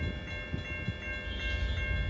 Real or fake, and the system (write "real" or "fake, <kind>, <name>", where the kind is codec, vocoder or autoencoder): real